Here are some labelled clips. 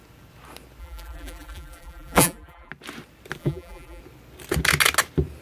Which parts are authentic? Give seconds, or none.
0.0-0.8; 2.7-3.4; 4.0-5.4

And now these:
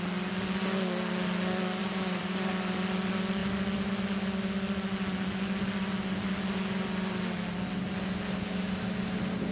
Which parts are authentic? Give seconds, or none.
0.0-1.8; 2.5-9.5